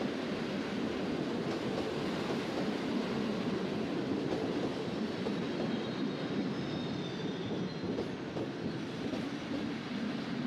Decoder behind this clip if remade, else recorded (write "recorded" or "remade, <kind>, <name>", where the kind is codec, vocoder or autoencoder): recorded